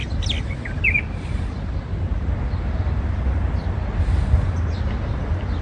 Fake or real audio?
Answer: real